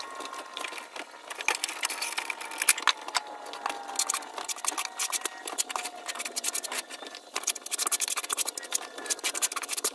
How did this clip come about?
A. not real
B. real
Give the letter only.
B